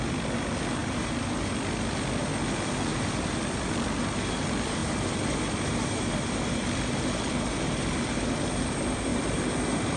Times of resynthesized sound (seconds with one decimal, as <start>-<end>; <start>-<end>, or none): 2.9-3.8; 9.1-10.0